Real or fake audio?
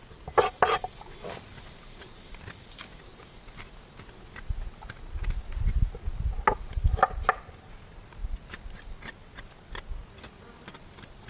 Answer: real